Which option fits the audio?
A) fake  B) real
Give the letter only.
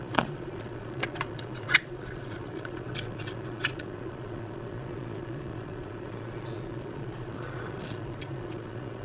A